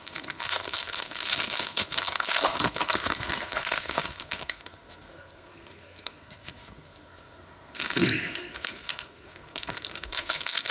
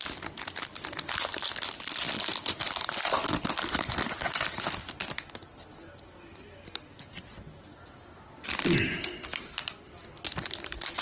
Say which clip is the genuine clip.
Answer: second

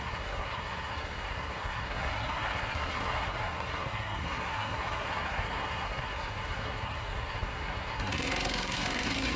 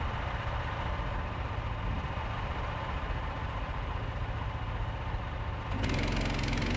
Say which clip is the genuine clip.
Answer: second